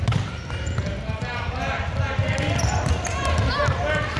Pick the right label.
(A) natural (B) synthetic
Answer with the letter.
A